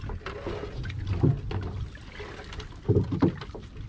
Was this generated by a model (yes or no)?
no